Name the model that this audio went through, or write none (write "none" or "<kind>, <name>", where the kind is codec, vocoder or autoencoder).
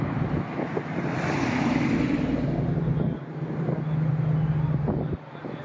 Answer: none